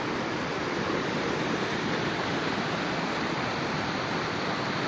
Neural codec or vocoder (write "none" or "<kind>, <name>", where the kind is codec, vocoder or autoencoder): none